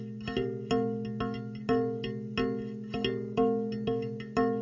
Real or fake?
real